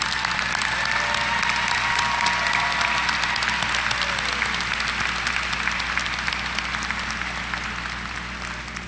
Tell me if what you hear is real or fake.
real